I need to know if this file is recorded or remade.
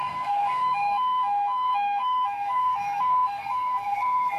remade